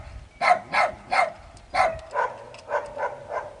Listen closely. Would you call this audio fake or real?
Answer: real